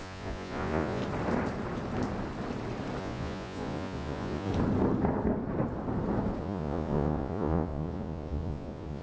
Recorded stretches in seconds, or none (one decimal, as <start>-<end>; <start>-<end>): 1.0-3.0; 4.5-6.4